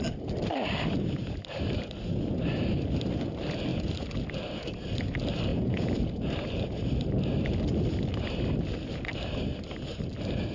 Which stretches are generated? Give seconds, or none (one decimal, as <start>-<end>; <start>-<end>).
5.5-6.1